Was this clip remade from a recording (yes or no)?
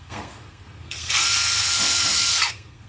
yes